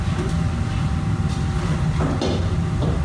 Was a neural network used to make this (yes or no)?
no